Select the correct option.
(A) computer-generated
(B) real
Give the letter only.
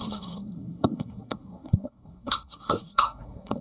A